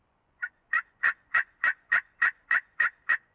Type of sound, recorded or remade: remade